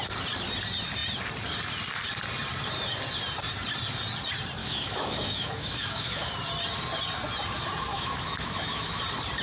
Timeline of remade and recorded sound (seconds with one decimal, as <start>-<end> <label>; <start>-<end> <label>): 0.0-4.6 recorded; 4.6-6.3 remade; 6.3-7.9 recorded; 7.9-9.0 remade; 9.0-9.4 recorded

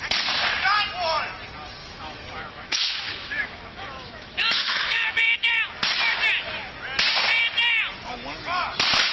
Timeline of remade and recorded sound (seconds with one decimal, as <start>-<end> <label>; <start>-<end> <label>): 0.0-1.8 recorded; 1.8-5.5 remade; 5.5-9.1 recorded

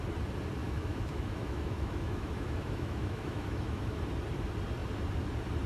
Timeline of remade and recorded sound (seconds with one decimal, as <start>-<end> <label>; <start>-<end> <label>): 0.0-0.6 recorded; 0.6-4.0 remade; 4.0-5.7 recorded

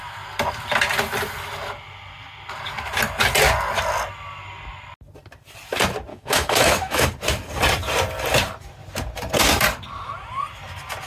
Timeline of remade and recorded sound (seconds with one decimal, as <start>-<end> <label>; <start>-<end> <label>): 0.0-6.1 recorded; 6.1-7.1 remade; 7.1-11.1 recorded

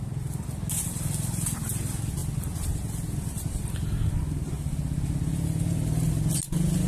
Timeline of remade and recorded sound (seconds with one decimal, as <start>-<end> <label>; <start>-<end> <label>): 0.0-6.9 recorded

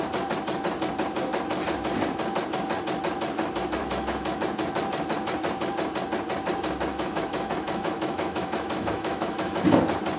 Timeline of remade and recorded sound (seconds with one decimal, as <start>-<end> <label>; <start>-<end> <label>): 0.0-3.8 recorded; 3.8-4.4 remade; 4.4-6.9 recorded; 6.9-9.6 remade; 9.6-10.2 recorded

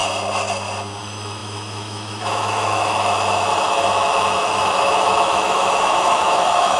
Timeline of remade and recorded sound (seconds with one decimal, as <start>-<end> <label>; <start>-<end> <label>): 0.0-1.0 recorded; 1.0-6.8 remade